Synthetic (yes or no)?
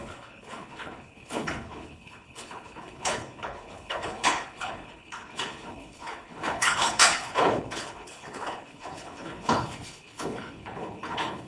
yes